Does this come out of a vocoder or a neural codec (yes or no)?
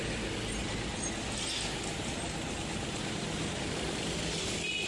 no